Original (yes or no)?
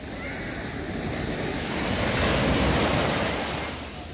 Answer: yes